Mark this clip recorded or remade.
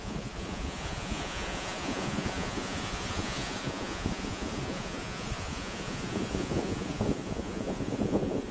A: remade